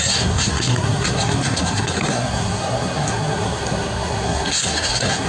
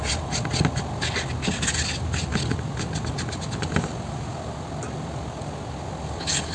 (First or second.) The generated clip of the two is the first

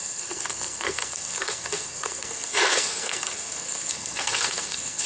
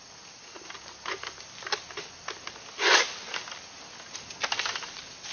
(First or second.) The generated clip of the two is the first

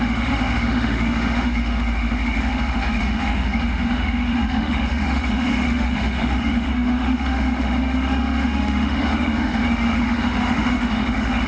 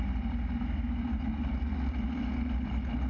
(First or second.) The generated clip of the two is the first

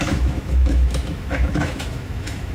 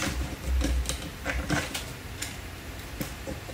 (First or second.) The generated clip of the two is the first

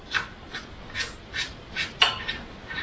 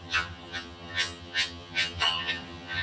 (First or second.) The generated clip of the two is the second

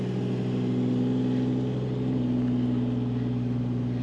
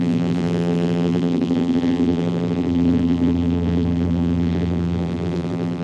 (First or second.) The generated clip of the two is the second